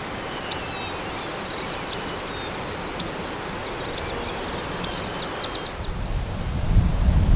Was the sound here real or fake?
real